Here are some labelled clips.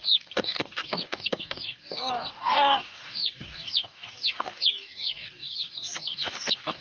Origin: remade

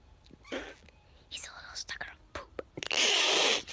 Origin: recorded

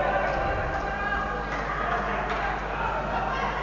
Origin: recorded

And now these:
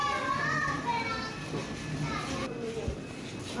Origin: recorded